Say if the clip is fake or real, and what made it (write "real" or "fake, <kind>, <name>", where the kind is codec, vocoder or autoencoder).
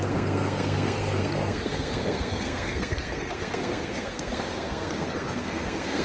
fake, codec, SNAC